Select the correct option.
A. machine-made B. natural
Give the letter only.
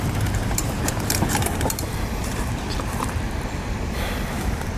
A